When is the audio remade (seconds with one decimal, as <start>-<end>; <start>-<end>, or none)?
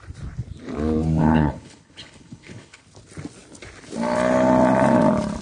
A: 1.2-2.8